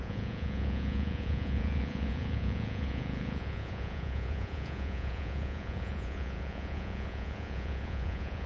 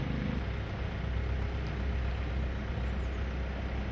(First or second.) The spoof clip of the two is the first